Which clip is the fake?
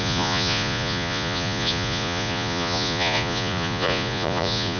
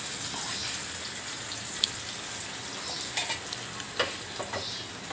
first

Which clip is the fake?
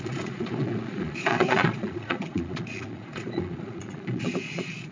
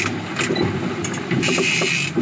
first